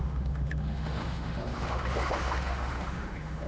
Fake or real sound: fake